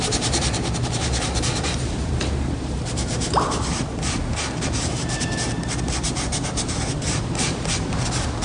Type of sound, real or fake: fake